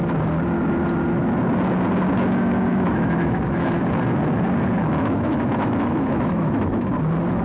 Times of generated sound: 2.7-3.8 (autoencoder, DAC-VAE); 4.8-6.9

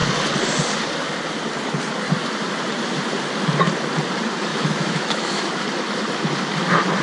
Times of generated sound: 4.5-5.5 (autoencoder, DAC-VAE)